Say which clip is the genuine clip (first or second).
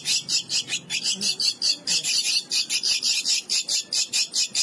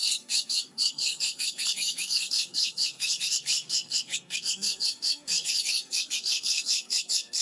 first